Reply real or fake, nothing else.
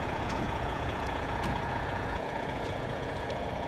fake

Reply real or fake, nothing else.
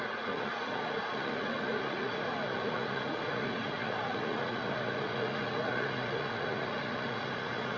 fake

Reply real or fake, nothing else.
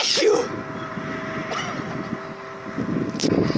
real